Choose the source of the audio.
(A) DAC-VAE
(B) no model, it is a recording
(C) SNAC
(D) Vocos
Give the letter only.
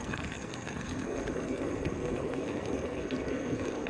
C